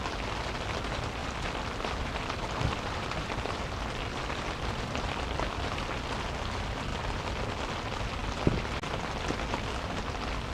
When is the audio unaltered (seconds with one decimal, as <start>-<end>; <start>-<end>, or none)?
0.0-1.2; 5.4-10.5